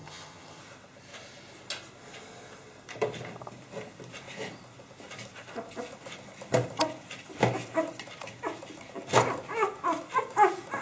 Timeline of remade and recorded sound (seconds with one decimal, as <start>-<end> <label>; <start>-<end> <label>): 0.0-0.6 remade; 0.6-10.8 recorded